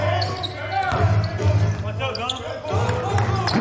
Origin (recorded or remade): recorded